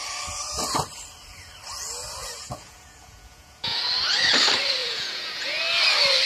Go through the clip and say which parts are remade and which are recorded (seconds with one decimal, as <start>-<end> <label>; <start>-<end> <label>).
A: 0.0-2.2 recorded; 2.2-3.8 remade; 3.8-4.8 recorded; 4.8-5.6 remade; 5.6-6.3 recorded